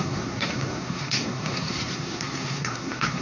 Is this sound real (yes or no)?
no